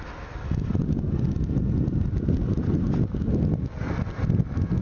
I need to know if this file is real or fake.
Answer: real